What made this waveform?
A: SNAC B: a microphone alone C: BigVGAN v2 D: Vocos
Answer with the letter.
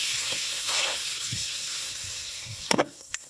A